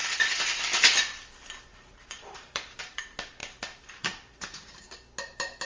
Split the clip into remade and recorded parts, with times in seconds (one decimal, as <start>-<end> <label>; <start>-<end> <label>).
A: 0.0-1.7 recorded; 1.7-3.0 remade; 3.0-3.4 recorded; 3.4-4.8 remade; 4.8-5.6 recorded